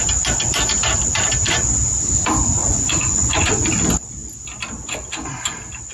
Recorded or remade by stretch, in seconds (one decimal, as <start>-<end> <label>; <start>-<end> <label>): 0.0-2.6 recorded; 2.6-3.5 remade; 3.5-5.9 recorded